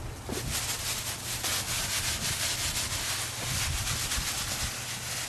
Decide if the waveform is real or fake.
real